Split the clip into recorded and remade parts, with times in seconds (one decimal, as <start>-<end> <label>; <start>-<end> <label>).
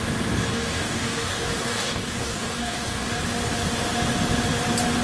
0.0-0.5 recorded; 0.5-3.2 remade; 3.2-5.0 recorded